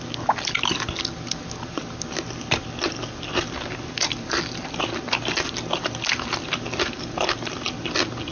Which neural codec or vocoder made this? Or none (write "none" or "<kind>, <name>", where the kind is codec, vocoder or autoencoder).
none